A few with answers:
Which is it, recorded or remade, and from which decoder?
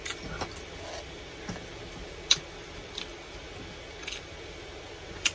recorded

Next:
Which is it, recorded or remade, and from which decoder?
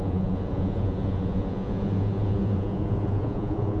remade, vocoder, Vocos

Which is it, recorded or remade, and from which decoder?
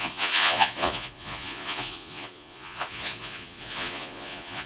remade, vocoder, Vocos